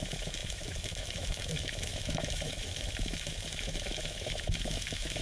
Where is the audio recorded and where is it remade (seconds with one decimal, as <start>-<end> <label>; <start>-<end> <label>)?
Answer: 0.0-5.2 remade